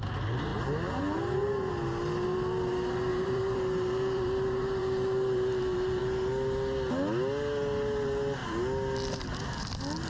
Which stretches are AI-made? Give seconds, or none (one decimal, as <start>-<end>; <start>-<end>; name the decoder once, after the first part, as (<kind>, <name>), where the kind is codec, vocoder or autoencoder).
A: 0.5-1.7 (vocoder, BigVGAN v2); 3.1-6.0

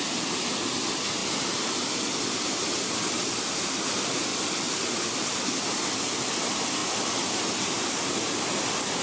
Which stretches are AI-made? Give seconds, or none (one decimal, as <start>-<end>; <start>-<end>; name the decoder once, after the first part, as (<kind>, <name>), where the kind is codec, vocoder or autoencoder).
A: 1.2-2.0 (vocoder, BigVGAN v2); 4.3-4.9

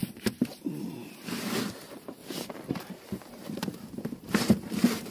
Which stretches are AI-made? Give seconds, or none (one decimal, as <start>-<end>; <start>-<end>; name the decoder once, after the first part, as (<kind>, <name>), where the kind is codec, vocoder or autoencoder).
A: 0.0-2.2 (vocoder, BigVGAN v2); 2.7-5.1

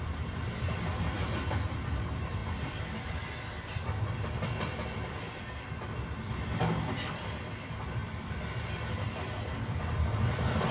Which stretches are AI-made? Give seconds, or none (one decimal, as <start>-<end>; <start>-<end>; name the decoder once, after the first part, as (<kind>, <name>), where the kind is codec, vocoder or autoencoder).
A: 0.0-10.7 (vocoder, BigVGAN v2)

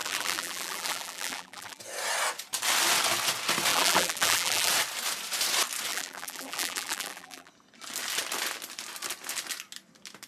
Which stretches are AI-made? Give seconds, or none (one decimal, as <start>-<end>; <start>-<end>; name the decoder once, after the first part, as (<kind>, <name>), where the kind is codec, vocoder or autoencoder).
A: 0.0-1.8 (vocoder, BigVGAN v2); 3.7-4.7; 5.9-7.5

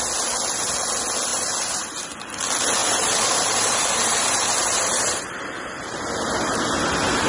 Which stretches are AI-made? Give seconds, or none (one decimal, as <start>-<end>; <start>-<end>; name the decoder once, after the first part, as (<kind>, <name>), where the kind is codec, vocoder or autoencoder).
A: 1.3-2.2 (vocoder, BigVGAN v2); 2.8-6.0